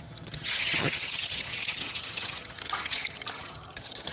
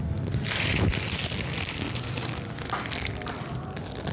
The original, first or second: second